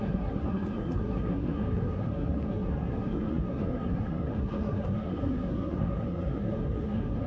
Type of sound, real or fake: fake